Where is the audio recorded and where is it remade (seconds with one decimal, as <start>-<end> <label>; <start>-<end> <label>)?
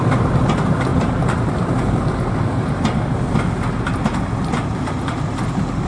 0.0-0.9 recorded; 0.9-2.3 remade; 2.3-5.9 recorded